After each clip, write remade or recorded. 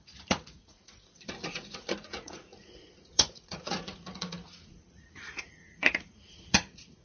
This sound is remade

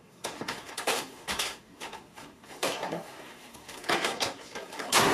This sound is remade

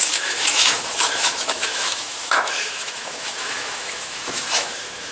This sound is remade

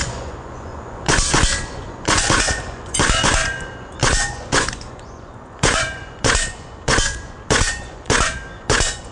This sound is remade